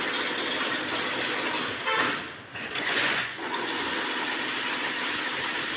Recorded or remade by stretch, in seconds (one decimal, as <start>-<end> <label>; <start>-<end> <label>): 0.0-2.5 recorded; 2.5-4.0 remade; 4.0-5.8 recorded